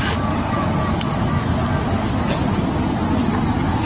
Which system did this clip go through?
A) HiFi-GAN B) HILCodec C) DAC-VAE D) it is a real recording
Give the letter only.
D